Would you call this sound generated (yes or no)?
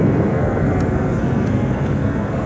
yes